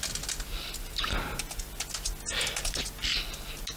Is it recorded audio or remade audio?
recorded